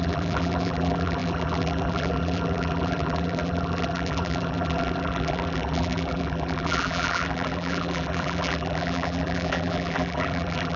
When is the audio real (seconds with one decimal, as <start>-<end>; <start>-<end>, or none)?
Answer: none